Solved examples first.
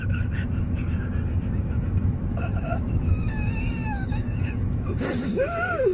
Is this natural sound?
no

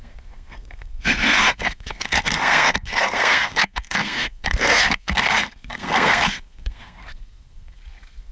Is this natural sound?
no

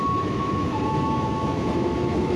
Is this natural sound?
no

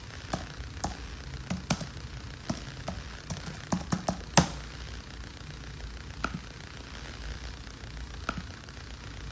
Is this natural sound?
yes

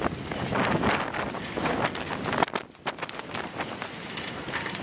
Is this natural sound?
yes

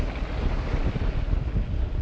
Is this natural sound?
yes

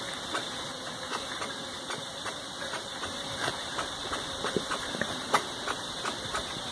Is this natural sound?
yes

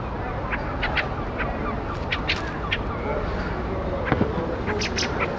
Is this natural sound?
yes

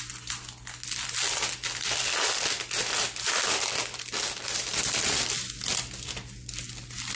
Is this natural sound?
yes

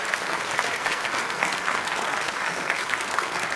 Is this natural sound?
no